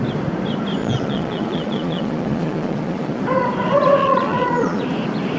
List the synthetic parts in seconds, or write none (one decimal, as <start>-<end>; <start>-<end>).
0.8-3.2; 4.0-4.8

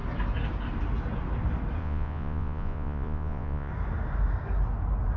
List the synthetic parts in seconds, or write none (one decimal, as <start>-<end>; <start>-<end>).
1.8-3.7

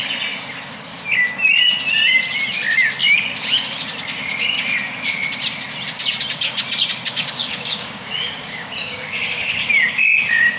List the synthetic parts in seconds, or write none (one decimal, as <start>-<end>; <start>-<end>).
7.1-9.7

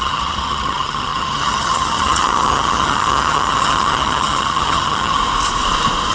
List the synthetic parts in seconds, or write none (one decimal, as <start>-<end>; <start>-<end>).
0.0-5.2

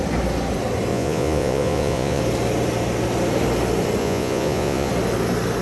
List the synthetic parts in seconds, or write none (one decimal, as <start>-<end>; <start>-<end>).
0.9-2.2; 4.0-4.9

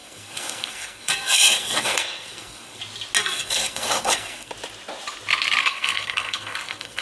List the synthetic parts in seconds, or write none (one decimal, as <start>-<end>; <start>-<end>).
0.0-2.8; 3.2-4.5; 5.6-7.0

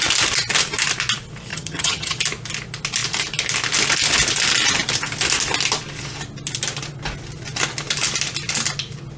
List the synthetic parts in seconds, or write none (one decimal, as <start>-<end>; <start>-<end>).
1.5-2.2

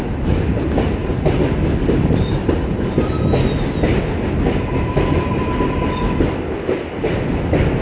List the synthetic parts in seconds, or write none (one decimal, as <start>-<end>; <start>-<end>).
none